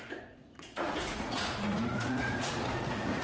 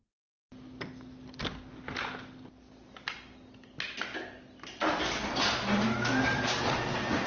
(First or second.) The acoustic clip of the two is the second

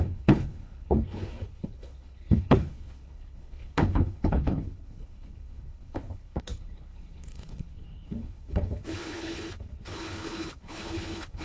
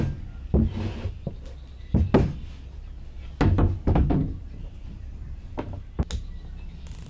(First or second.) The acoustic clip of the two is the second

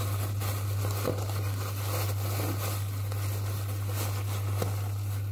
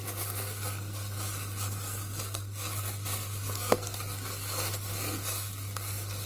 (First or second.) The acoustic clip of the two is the first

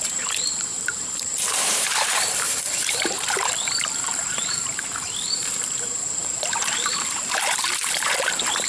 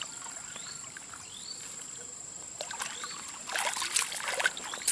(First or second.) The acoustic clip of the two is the second